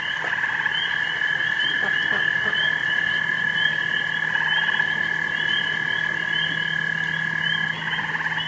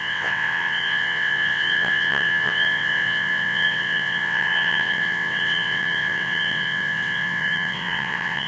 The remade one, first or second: second